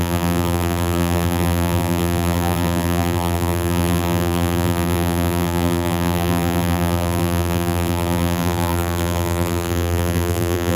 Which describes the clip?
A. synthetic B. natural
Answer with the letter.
A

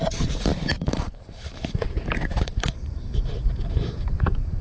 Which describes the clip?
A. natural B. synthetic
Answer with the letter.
B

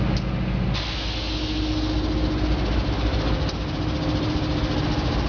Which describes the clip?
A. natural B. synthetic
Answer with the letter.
A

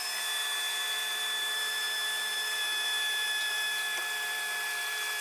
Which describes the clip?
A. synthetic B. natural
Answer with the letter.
A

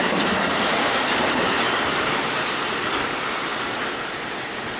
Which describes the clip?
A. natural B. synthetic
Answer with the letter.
B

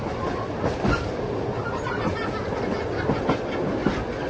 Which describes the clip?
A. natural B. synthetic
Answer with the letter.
A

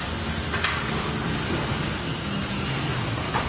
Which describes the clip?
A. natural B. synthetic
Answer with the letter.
A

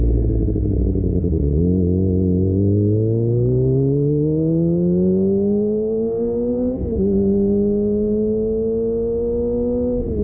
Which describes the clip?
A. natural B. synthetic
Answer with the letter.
A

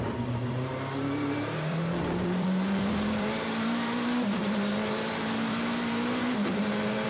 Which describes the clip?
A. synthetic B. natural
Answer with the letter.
A